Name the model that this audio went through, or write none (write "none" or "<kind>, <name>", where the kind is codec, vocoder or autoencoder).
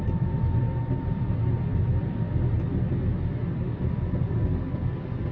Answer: none